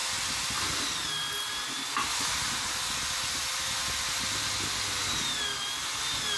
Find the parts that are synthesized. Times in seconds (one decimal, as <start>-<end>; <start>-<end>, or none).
none